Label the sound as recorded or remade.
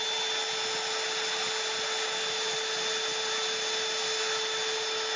recorded